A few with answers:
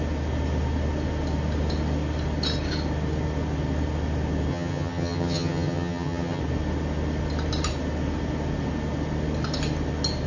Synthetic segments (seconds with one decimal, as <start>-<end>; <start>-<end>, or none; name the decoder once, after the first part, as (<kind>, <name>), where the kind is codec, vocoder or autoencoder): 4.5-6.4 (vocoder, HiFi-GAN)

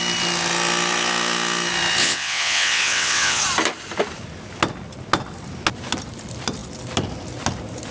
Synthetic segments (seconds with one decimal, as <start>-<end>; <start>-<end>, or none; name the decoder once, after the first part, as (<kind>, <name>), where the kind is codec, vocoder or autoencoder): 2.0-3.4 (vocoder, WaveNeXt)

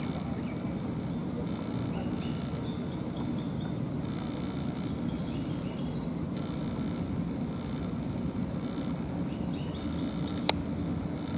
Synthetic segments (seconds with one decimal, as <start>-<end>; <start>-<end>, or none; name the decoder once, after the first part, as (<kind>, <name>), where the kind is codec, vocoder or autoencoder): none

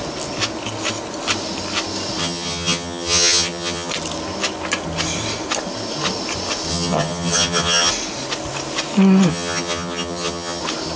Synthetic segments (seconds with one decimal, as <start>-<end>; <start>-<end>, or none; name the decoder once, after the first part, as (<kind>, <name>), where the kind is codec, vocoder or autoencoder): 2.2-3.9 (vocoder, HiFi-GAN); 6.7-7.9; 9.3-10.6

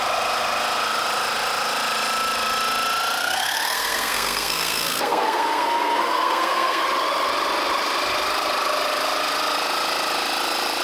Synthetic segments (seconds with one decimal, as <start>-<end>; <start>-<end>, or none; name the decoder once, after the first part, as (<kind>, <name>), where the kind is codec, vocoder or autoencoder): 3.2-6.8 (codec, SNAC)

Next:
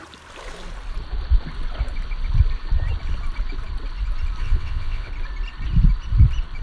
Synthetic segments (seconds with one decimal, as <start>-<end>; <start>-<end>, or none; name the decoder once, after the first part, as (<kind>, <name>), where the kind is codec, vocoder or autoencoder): 4.4-5.1 (vocoder, WaveNeXt)

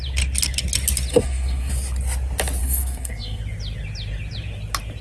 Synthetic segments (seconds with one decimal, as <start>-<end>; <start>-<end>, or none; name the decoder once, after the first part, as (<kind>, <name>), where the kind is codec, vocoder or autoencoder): 1.1-1.7 (codec, SNAC); 2.6-3.4

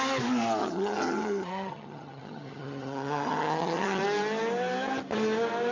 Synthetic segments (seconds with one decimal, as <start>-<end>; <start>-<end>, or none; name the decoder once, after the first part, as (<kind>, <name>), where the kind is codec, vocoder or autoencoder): 0.6-4.0 (vocoder, HiFi-GAN)